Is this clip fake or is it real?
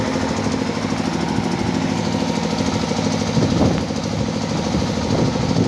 real